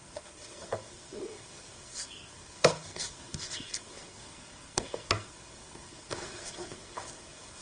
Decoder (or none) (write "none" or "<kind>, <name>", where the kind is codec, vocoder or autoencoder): codec, SNAC